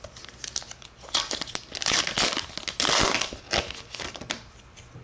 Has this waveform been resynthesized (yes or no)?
no